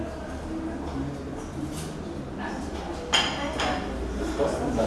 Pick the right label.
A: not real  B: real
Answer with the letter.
B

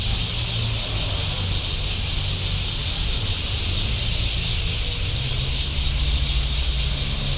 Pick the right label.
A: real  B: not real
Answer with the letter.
A